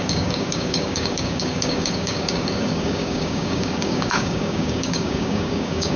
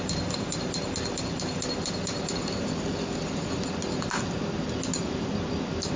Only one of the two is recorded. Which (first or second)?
second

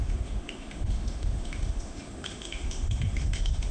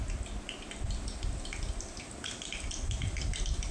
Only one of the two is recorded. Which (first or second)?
second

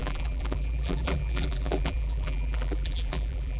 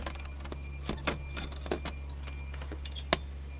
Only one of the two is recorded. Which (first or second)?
second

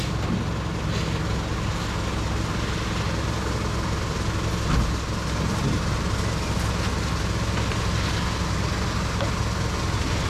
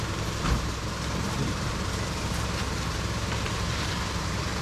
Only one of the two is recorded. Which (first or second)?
first